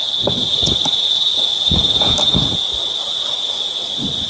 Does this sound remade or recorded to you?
recorded